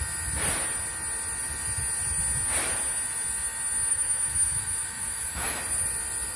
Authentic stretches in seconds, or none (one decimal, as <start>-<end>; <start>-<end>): 0.0-3.9; 5.6-6.4